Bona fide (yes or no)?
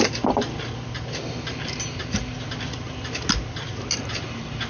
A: yes